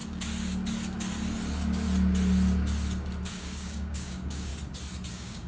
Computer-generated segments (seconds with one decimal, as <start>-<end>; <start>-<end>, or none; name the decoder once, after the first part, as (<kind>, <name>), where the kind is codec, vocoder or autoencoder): 3.3-4.5 (codec, DAC); 5.1-5.5